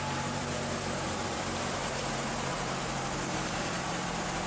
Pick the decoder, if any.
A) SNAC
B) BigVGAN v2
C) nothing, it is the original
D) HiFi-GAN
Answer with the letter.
B